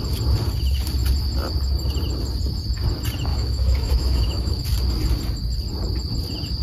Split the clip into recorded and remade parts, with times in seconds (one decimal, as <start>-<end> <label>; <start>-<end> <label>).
0.0-3.3 recorded; 3.3-4.6 remade; 4.6-6.6 recorded